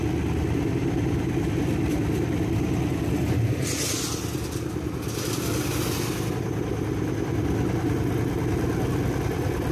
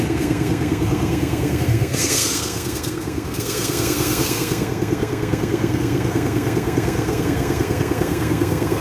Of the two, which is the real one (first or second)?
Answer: first